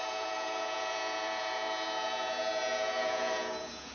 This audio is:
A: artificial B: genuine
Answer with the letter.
A